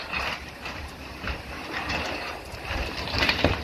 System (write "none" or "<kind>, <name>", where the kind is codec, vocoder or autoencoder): vocoder, BigVGAN v2